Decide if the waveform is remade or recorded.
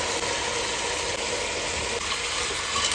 recorded